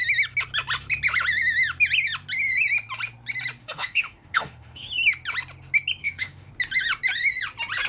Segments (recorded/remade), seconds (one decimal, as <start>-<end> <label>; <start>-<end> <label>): 0.0-3.6 recorded; 3.6-4.9 remade; 4.9-6.0 recorded; 6.0-6.5 remade; 6.5-7.9 recorded